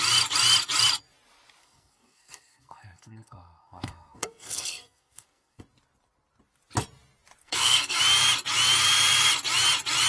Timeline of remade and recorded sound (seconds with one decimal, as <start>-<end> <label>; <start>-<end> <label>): 0.0-1.6 recorded; 1.6-5.6 remade; 5.6-7.4 recorded; 7.4-8.0 remade; 8.0-10.1 recorded